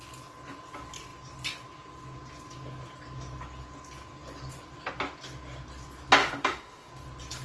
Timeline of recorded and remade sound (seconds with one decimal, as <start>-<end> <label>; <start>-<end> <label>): 0.0-6.2 recorded; 6.2-6.9 remade; 6.9-7.4 recorded